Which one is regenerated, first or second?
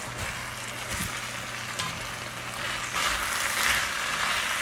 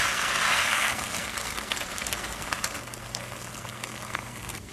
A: second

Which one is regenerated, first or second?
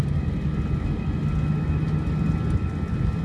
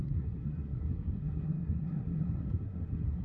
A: second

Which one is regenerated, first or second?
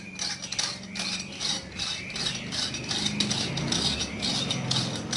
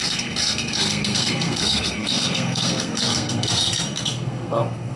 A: second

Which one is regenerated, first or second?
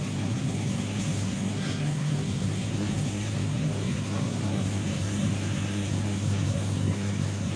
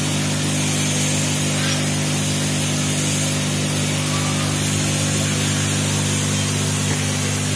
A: first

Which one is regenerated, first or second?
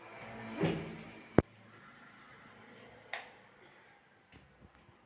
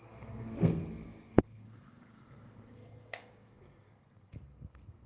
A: second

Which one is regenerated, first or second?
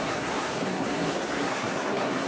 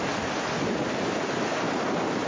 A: first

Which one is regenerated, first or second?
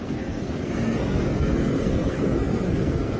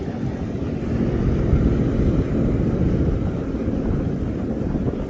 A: first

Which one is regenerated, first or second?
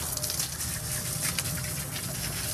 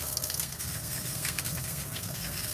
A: second